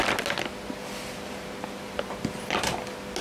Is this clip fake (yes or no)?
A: no